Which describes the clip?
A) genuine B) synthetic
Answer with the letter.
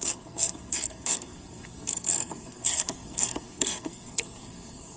B